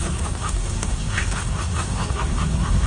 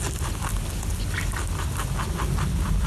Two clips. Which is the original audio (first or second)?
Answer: second